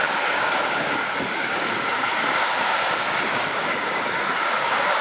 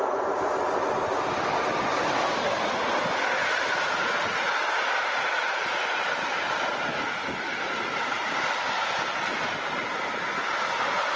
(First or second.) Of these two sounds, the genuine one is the second